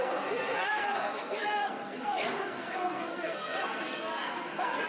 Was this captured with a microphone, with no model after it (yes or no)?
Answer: no